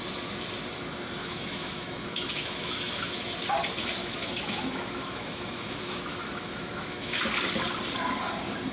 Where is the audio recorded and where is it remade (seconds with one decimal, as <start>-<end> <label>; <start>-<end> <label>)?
0.0-1.2 recorded; 1.2-3.4 remade; 3.4-4.0 recorded; 4.0-7.2 remade; 7.2-8.7 recorded